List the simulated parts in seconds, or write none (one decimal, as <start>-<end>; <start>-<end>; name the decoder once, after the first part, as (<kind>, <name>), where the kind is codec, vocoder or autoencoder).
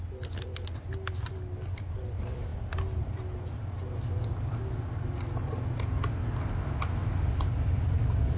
none